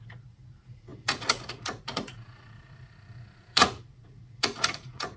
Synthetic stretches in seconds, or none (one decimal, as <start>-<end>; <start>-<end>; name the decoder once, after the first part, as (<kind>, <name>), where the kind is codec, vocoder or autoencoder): 0.0-5.2 (vocoder, Vocos)